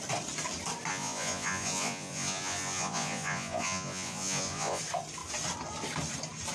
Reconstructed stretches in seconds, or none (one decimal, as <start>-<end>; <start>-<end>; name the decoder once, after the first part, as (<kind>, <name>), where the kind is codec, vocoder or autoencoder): 0.9-4.8 (vocoder, Vocos)